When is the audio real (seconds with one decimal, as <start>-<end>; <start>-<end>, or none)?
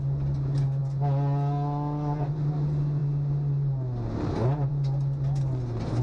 0.0-6.0